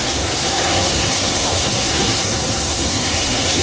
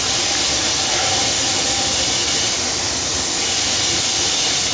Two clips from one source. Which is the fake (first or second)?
first